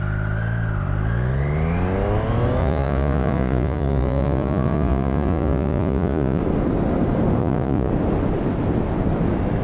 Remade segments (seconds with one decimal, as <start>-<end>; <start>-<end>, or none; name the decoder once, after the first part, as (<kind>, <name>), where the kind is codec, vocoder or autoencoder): 2.6-6.4 (vocoder, Vocos); 7.4-7.9